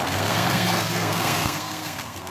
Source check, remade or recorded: remade